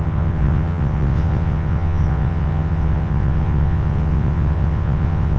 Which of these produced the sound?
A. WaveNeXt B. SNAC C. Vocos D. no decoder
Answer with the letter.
A